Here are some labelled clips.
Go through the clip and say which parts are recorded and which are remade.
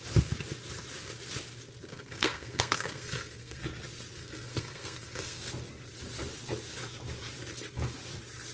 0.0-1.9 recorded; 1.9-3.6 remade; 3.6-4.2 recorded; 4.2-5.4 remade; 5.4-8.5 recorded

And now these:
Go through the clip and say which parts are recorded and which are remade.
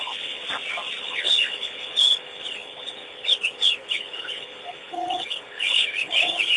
0.0-0.4 remade; 0.4-1.0 recorded; 1.0-6.6 remade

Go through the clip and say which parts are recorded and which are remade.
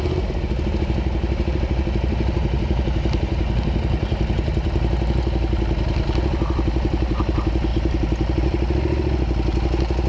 0.0-10.1 recorded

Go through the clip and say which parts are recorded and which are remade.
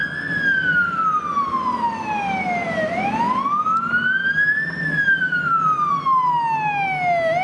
0.0-4.2 recorded; 4.2-5.9 remade; 5.9-7.4 recorded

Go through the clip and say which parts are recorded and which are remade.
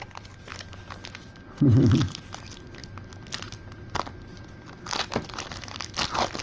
0.0-6.4 recorded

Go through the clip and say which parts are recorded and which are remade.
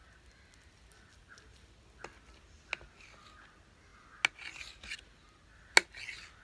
0.0-6.4 recorded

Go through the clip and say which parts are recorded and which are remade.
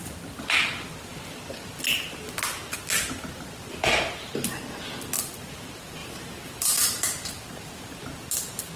0.0-6.0 recorded; 6.0-7.8 remade; 7.8-8.8 recorded